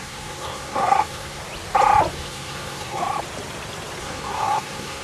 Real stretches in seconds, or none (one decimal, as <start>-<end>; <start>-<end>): 1.4-2.1; 3.0-4.0